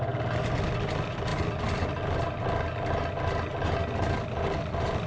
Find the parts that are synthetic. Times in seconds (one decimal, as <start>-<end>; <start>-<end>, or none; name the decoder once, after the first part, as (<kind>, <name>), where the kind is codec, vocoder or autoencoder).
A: none